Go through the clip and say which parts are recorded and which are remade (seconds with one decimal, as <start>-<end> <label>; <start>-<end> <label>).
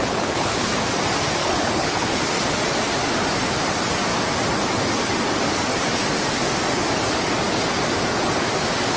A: 0.0-0.7 remade; 0.7-1.4 recorded; 1.4-2.2 remade; 2.2-9.0 recorded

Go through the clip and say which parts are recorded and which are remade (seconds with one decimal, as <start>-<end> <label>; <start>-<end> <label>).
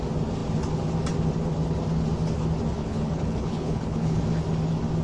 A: 0.0-2.8 recorded; 2.8-4.2 remade; 4.2-5.0 recorded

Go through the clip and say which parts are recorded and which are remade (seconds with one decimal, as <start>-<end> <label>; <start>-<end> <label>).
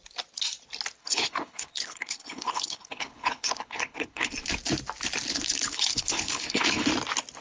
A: 0.0-1.0 recorded; 1.0-4.3 remade; 4.3-5.3 recorded; 5.3-6.9 remade; 6.9-7.4 recorded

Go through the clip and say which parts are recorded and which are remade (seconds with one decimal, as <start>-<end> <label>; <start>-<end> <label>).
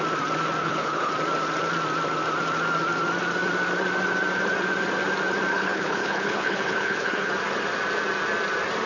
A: 0.0-0.6 recorded; 0.6-1.1 remade; 1.1-5.5 recorded; 5.5-7.3 remade; 7.3-8.9 recorded